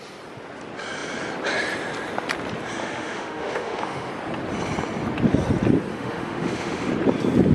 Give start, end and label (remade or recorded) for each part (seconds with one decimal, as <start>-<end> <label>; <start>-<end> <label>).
0.0-2.8 recorded; 2.8-4.1 remade; 4.1-5.9 recorded; 5.9-6.9 remade; 6.9-7.5 recorded